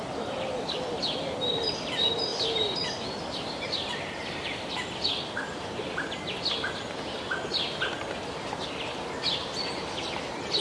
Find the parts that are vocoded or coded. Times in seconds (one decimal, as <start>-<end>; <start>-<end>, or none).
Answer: none